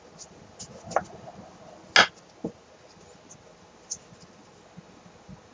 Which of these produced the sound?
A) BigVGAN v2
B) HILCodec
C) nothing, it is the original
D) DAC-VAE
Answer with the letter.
C